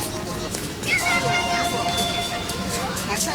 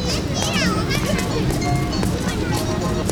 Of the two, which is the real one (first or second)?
second